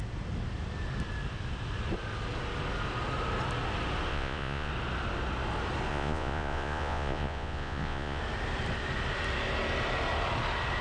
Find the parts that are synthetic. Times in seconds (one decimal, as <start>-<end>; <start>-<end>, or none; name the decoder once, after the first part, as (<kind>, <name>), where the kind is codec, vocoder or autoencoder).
4.1-4.7 (vocoder, Vocos); 5.9-8.2